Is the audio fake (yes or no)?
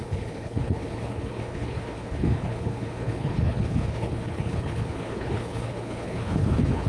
yes